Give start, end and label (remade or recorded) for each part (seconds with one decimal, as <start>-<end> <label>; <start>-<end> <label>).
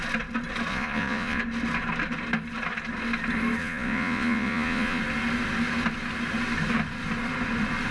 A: 0.0-0.7 recorded; 0.7-1.4 remade; 1.4-3.6 recorded; 3.6-5.0 remade; 5.0-7.9 recorded